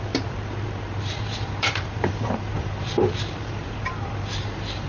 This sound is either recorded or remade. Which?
remade